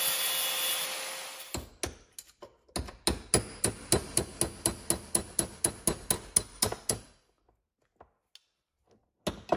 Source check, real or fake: real